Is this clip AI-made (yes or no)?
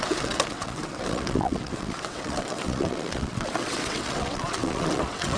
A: yes